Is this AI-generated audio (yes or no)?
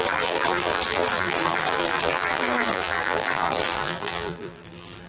yes